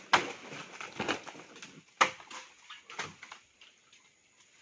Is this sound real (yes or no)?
yes